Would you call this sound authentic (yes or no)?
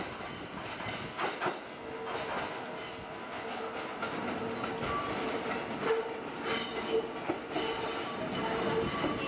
yes